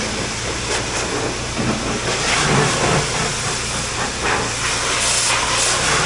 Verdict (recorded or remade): recorded